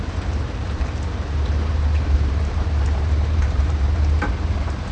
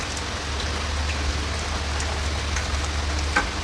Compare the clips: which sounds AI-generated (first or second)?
first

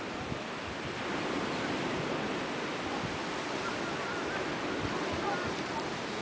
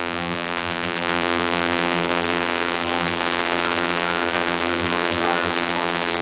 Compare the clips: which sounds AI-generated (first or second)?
second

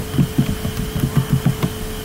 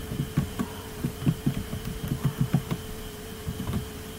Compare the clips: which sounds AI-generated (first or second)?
second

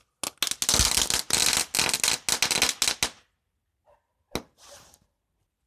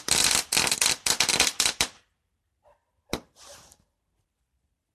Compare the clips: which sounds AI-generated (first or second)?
second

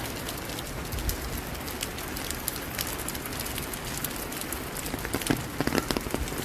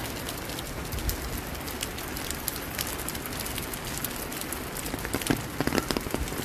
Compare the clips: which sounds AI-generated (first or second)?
second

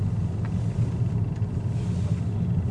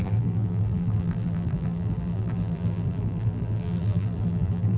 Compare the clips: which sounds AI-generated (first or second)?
second